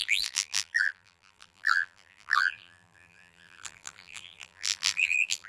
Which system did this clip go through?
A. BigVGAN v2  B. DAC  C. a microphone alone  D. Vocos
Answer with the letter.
A